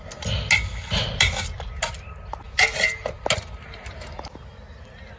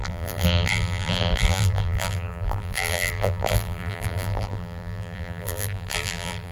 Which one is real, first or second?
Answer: first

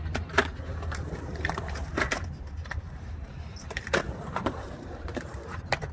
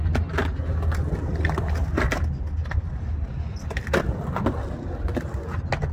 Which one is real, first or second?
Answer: second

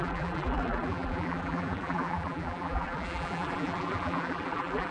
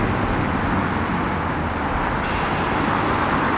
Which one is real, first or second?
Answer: second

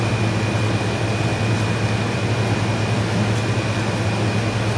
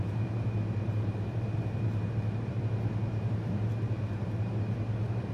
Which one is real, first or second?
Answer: first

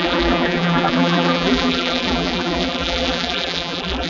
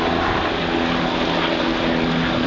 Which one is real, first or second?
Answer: second